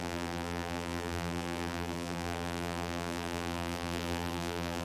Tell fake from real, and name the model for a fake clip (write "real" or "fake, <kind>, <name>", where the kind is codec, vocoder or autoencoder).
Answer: fake, vocoder, BigVGAN v2